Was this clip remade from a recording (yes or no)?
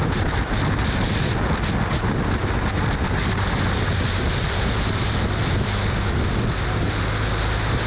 no